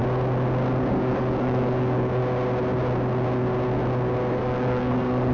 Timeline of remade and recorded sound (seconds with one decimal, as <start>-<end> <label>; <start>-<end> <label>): 0.0-0.9 recorded; 0.9-2.2 remade; 2.2-4.3 recorded; 4.3-5.3 remade